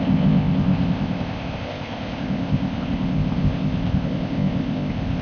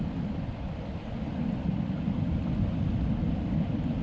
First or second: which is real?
second